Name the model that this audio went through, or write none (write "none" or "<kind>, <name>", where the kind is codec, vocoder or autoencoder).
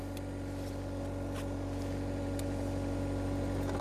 none